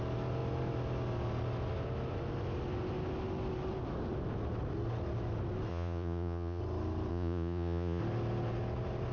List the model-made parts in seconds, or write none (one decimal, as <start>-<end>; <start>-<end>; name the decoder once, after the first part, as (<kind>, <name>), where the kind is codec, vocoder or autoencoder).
5.7-6.6 (vocoder, Vocos); 7.1-8.0